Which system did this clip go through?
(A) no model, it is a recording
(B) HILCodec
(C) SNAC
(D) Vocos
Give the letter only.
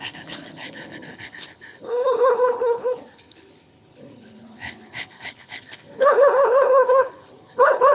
B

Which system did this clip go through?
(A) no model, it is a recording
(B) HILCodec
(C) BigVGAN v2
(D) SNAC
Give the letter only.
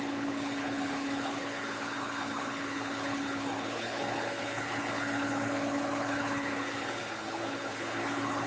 B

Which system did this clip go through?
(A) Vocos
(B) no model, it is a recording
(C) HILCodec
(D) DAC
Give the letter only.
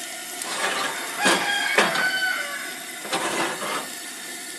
B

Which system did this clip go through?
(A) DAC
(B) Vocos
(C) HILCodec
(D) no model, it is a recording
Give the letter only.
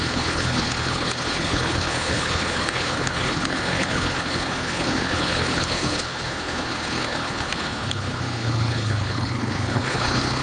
C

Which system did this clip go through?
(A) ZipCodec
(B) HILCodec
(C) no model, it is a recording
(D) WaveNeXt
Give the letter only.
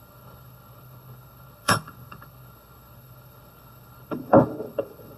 B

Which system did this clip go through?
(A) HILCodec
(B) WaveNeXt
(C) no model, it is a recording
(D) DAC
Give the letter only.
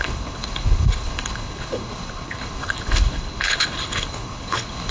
A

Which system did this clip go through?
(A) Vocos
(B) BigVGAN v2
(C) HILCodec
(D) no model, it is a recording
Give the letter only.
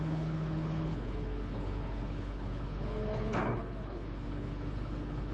C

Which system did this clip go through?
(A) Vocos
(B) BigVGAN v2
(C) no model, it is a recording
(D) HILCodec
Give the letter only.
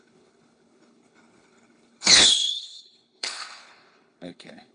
D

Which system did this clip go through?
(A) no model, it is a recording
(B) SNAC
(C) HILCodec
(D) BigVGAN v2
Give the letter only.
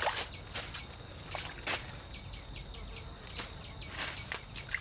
A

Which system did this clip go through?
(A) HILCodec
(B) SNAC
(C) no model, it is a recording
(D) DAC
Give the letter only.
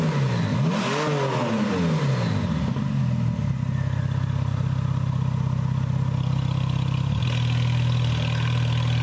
C